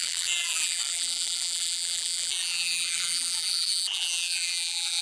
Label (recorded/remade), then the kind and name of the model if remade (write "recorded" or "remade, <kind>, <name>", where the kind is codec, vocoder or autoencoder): remade, vocoder, BigVGAN v2